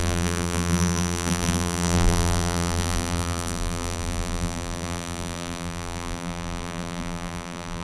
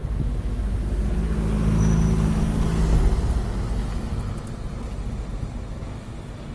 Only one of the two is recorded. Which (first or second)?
second